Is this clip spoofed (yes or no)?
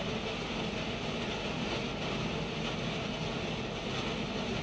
no